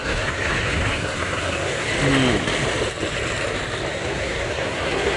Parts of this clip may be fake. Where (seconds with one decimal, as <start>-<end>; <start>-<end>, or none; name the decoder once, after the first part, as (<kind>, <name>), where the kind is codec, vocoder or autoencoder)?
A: 0.0-1.9 (codec, SNAC); 3.9-5.2